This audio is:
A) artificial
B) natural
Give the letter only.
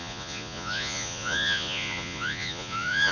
A